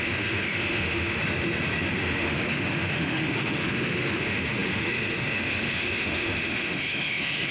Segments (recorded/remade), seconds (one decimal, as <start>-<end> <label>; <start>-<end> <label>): 0.0-1.2 remade; 1.2-1.9 recorded; 1.9-7.5 remade